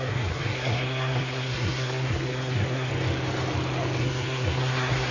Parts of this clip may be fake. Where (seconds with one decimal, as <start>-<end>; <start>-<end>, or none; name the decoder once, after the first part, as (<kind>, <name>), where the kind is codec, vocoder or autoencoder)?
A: 0.0-2.9 (codec, SNAC); 4.0-5.1